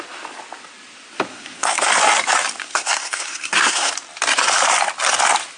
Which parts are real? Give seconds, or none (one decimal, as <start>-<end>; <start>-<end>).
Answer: 0.0-1.3; 1.9-2.6; 3.9-5.6